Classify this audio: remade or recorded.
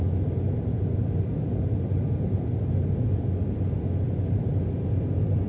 recorded